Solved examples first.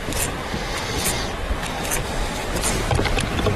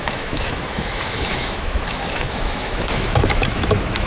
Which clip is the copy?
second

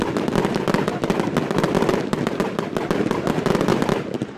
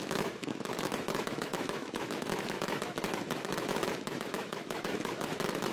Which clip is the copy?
second